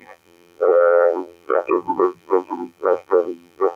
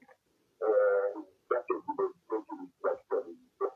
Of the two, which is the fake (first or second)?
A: first